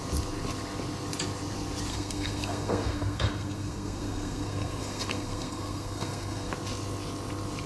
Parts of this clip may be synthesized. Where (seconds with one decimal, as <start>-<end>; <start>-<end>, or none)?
1.9-6.5